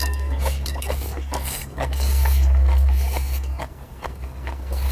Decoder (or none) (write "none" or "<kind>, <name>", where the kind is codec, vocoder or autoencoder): codec, SNAC